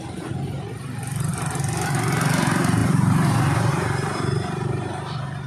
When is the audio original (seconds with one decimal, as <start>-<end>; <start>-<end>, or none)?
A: 1.3-2.3